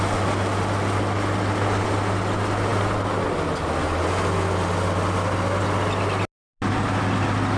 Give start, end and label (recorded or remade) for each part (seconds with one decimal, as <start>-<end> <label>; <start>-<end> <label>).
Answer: 0.0-7.6 recorded